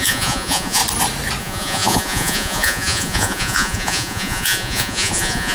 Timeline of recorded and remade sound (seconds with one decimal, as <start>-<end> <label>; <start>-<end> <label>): 0.0-0.8 remade; 0.8-1.4 recorded; 1.4-5.5 remade